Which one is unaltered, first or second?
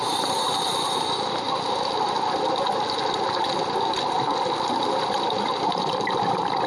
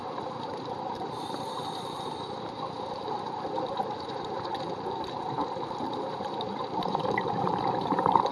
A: first